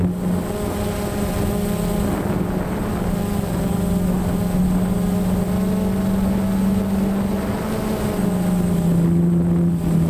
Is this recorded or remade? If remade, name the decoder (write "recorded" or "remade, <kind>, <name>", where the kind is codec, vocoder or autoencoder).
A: recorded